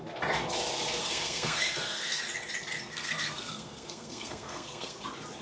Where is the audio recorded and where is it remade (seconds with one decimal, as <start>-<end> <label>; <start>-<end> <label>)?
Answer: 0.0-1.0 recorded; 1.0-2.2 remade; 2.2-2.9 recorded; 2.9-5.0 remade; 5.0-5.4 recorded